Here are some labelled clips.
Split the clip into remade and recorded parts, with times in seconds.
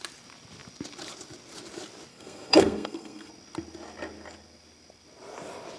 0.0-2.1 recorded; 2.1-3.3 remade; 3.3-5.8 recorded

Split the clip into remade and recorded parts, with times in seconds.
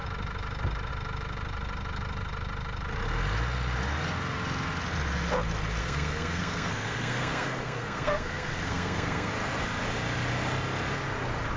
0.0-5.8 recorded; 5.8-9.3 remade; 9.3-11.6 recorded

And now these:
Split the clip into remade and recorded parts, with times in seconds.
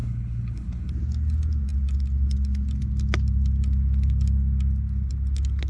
0.0-0.9 remade; 0.9-5.7 recorded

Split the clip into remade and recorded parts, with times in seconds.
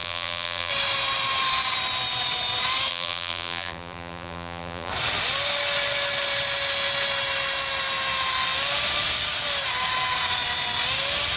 0.0-0.7 remade; 0.7-2.9 recorded; 2.9-4.9 remade; 4.9-11.4 recorded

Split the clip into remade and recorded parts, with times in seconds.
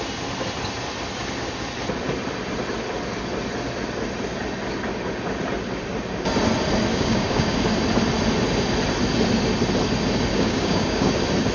0.0-6.9 recorded; 6.9-7.6 remade; 7.6-10.3 recorded; 10.3-11.1 remade; 11.1-11.5 recorded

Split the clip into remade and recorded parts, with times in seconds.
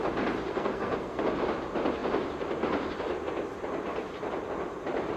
0.0-0.5 recorded; 0.5-1.2 remade; 1.2-5.2 recorded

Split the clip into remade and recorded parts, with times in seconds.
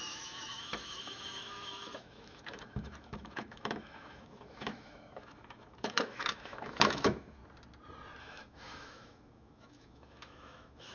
0.0-7.4 remade; 7.4-8.2 recorded; 8.2-10.9 remade